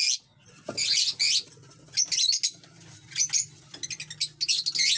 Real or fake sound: real